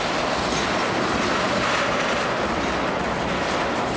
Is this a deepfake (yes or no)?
no